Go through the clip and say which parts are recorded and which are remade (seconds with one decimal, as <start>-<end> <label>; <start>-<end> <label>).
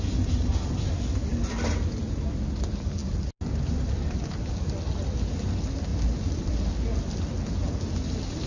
0.0-1.3 recorded; 1.3-2.0 remade; 2.0-5.9 recorded; 5.9-6.5 remade; 6.5-8.5 recorded